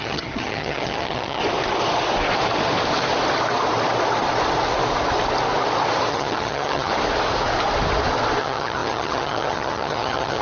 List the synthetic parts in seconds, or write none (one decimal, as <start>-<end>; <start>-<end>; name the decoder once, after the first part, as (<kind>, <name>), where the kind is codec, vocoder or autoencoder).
0.0-1.4 (vocoder, HiFi-GAN); 6.1-6.9; 8.4-10.4